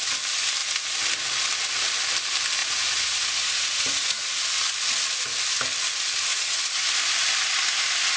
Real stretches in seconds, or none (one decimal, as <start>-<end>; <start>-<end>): 0.0-2.6; 4.3-6.3; 6.8-8.2